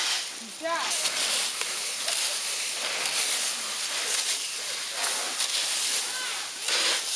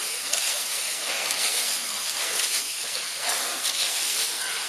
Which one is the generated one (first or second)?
second